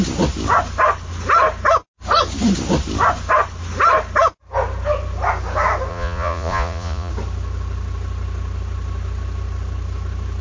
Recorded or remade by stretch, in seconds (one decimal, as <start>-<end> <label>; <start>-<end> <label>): 0.0-5.9 recorded; 5.9-7.1 remade; 7.1-10.4 recorded